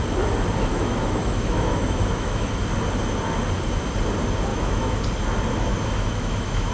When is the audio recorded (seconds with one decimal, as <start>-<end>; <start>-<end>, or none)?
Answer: 0.0-0.7; 2.5-4.5; 5.0-5.7